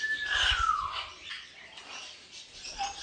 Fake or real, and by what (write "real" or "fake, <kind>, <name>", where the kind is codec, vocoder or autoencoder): real